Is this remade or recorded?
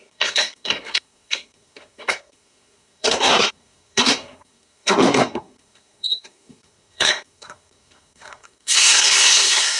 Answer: remade